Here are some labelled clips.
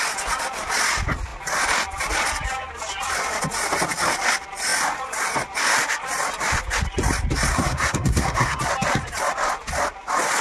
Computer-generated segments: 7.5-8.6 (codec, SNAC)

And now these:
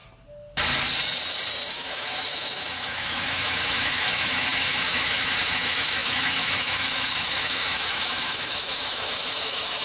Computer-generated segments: 1.7-9.8 (autoencoder, DAC-VAE)

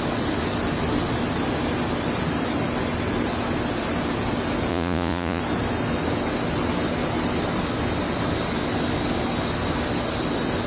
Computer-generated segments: 4.7-5.4 (vocoder, Vocos)

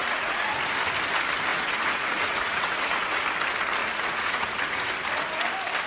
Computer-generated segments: 0.0-0.5 (vocoder, Vocos); 1.5-3.2; 3.8-4.9

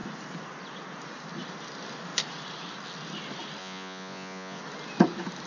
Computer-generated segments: 3.6-4.6 (vocoder, Vocos)

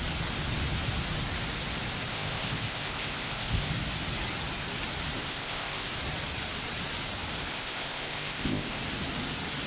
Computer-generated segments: 2.1-3.7 (codec, ZipCodec); 5.2-5.9; 7.5-8.8

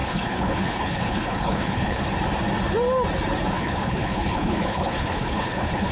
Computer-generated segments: 0.0-2.0 (codec, HILCodec); 3.5-5.9